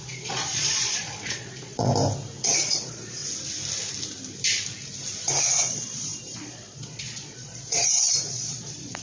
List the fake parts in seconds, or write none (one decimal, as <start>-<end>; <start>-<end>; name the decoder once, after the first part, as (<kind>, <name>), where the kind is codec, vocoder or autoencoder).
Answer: 0.0-1.9 (vocoder, Vocos); 2.4-3.2; 5.5-9.0